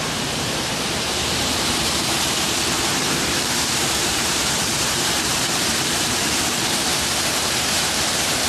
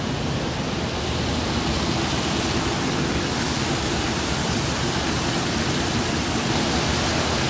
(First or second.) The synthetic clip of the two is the first